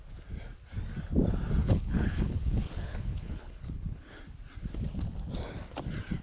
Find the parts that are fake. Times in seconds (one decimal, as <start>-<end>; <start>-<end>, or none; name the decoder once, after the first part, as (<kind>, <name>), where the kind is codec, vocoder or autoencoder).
1.6-4.2 (codec, HILCodec)